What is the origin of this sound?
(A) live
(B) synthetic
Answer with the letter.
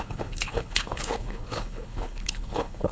B